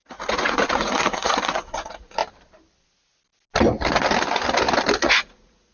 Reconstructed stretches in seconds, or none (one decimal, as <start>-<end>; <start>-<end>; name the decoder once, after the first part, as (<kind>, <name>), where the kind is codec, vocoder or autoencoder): 0.0-2.2 (vocoder, Vocos); 5.0-5.7